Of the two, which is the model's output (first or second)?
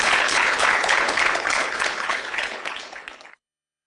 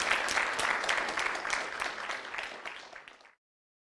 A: first